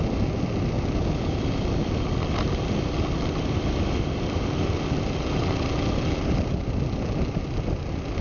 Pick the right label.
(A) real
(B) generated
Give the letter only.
A